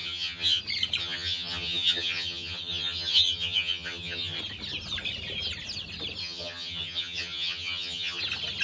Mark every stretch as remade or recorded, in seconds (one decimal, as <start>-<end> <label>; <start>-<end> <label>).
0.0-0.6 remade; 0.6-1.0 recorded; 1.0-4.4 remade; 4.4-6.2 recorded; 6.2-8.2 remade; 8.2-8.6 recorded